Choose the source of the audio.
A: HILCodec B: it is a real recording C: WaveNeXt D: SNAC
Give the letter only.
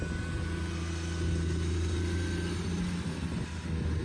B